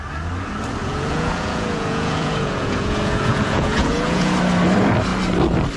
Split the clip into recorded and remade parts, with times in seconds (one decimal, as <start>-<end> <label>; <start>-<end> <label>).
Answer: 0.0-0.8 recorded; 0.8-4.3 remade; 4.3-5.8 recorded